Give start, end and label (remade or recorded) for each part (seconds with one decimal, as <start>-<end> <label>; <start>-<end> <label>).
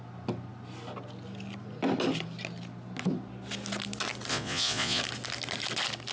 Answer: 0.0-4.3 recorded; 4.3-5.0 remade; 5.0-6.1 recorded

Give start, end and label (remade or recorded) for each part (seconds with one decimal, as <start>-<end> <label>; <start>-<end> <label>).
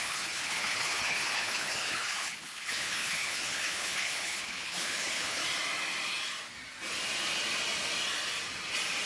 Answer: 0.0-5.4 remade; 5.4-9.1 recorded